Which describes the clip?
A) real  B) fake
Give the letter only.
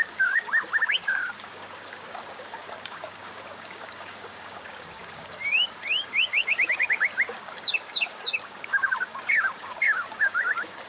B